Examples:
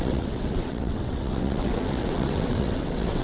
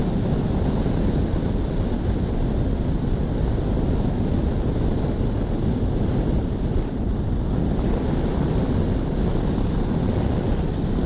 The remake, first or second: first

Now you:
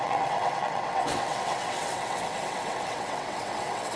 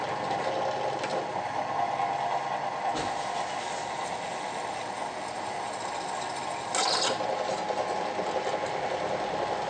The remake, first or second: first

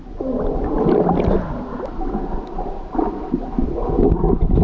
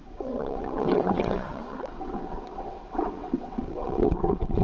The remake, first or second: second